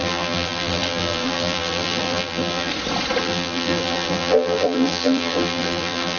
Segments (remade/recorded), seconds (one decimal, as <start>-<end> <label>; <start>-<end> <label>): 0.0-2.7 remade; 2.7-3.2 recorded; 3.2-6.2 remade

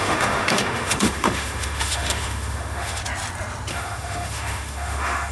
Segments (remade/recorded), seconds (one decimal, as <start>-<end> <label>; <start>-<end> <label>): 0.0-3.0 remade; 3.0-3.7 recorded; 3.7-5.3 remade